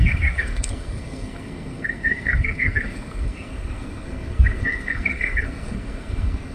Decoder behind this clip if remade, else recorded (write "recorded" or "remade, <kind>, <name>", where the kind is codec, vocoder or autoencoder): remade, codec, SNAC